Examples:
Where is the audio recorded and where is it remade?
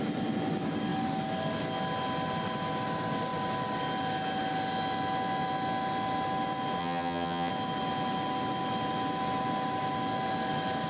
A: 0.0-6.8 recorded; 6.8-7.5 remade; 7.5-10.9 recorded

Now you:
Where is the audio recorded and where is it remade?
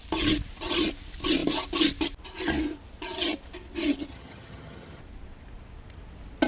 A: 0.0-4.1 recorded; 4.1-5.0 remade; 5.0-6.5 recorded